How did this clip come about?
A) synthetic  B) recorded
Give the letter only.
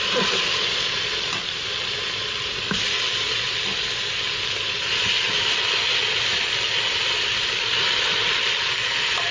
B